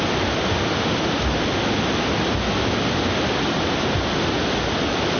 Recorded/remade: recorded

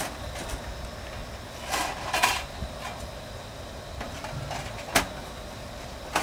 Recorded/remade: recorded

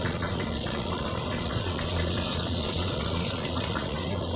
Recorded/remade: remade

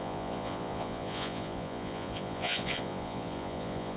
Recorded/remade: remade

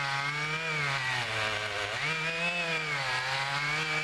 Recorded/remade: recorded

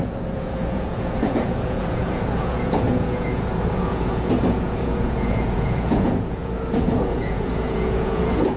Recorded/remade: remade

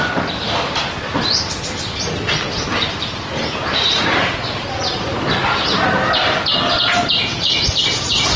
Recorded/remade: recorded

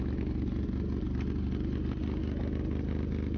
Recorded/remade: recorded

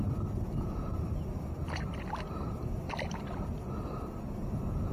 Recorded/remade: recorded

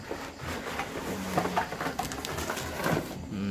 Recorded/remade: recorded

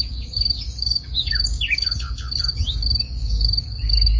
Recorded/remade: remade